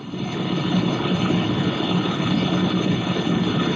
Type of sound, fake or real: fake